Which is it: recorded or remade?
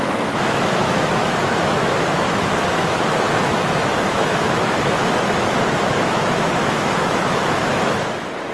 remade